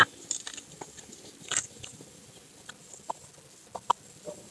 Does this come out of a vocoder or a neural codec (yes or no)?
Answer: no